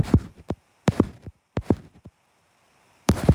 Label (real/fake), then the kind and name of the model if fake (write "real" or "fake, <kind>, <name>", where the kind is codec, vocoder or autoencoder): fake, vocoder, BigVGAN v2